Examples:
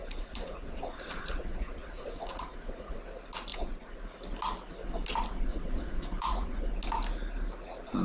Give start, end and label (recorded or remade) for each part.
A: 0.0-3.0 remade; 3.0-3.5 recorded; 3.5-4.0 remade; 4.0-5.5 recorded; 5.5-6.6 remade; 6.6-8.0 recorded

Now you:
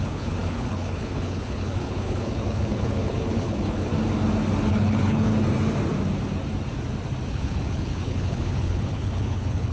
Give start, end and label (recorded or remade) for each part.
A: 0.0-3.9 remade; 3.9-4.7 recorded; 4.7-5.3 remade; 5.3-7.3 recorded; 7.3-9.7 remade

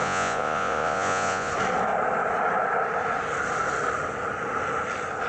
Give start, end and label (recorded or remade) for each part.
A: 0.0-1.5 remade; 1.5-5.3 recorded